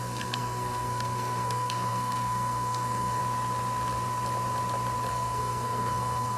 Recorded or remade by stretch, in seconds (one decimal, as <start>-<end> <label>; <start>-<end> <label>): 0.0-3.2 remade; 3.2-5.1 recorded; 5.1-6.4 remade